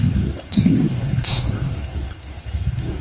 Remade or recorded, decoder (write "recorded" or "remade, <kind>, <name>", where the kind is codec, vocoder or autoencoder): remade, codec, SNAC